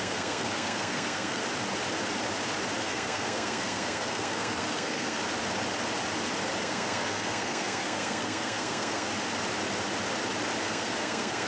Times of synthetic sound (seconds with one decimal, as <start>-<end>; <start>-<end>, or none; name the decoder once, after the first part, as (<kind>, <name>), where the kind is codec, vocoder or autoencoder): 0.0-1.4 (codec, SNAC); 2.8-5.2; 6.6-9.1; 10.6-11.5